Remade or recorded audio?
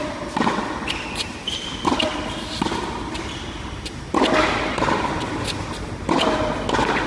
recorded